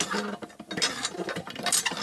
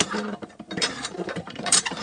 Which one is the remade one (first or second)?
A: second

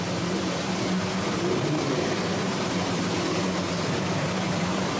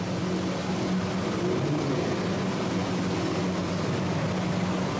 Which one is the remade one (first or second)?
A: first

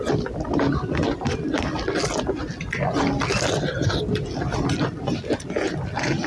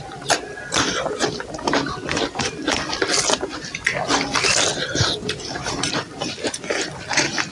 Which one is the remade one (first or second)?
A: second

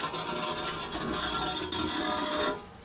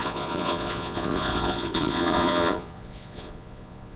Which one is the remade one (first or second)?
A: second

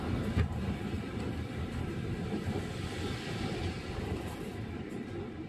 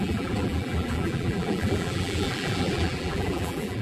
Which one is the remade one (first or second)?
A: second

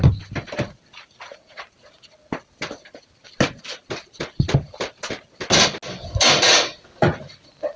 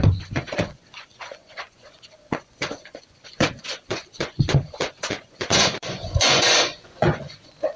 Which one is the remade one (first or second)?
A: second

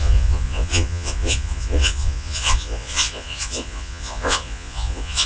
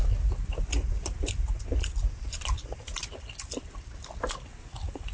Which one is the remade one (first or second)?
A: first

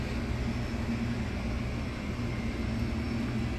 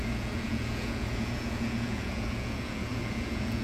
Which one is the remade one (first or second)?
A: second